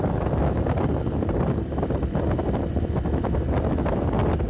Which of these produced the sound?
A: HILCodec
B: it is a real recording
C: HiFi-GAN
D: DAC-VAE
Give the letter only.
B